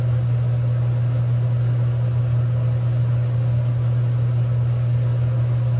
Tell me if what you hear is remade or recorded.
recorded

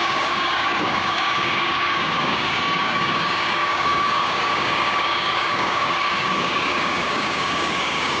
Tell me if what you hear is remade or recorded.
remade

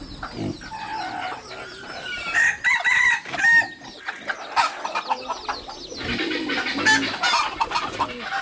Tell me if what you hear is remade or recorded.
recorded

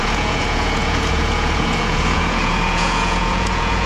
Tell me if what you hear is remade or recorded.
remade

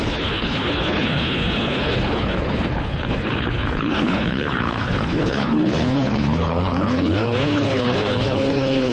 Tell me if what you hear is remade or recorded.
remade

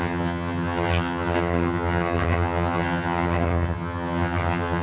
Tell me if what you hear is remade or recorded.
remade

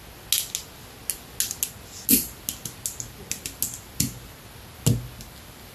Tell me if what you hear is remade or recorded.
recorded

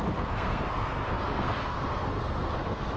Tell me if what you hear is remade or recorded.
remade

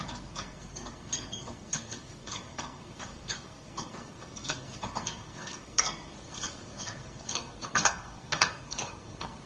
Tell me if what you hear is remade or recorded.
remade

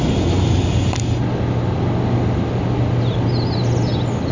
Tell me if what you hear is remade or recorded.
recorded